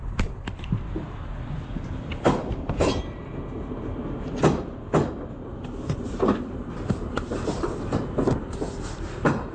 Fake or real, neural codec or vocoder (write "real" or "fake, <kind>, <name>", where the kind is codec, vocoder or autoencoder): fake, vocoder, BigVGAN v2